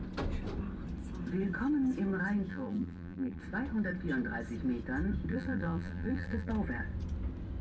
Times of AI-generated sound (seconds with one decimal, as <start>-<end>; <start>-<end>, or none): 2.5-3.4; 5.3-6.5